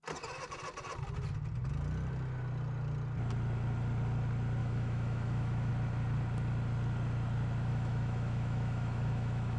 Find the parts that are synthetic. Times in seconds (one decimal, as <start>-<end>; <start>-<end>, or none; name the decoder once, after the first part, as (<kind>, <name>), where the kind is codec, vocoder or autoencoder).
4.6-5.7 (autoencoder, DAC-VAE); 7.7-9.6